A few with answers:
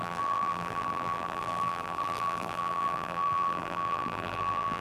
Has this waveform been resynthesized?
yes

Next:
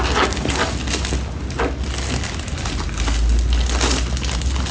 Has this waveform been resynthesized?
no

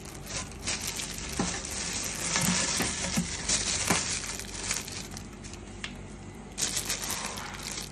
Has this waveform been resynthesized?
no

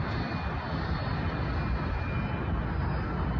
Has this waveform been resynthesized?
no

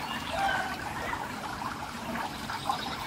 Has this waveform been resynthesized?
no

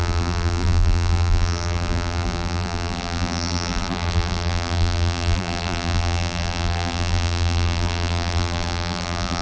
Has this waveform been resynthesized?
yes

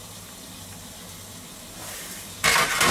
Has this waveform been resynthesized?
yes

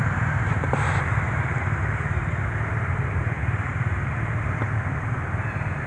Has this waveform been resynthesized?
yes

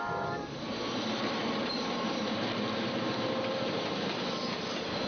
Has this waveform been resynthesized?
yes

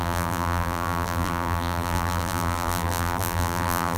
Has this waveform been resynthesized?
yes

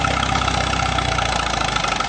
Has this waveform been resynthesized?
no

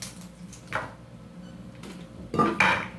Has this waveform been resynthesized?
no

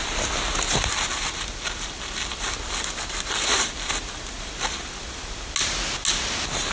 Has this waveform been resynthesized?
no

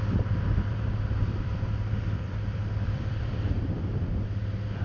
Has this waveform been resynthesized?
yes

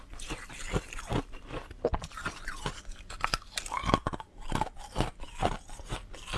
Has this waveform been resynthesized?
no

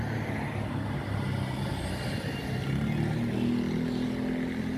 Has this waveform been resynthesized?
no